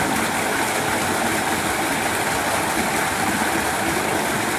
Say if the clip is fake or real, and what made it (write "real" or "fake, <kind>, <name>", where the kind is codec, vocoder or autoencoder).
real